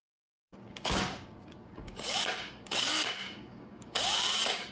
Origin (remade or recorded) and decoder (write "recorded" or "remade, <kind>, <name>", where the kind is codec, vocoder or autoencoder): remade, codec, DAC